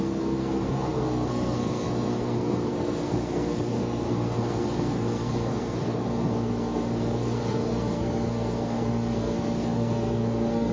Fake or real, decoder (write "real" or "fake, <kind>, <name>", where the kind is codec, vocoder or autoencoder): fake, codec, SNAC